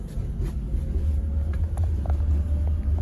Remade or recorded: recorded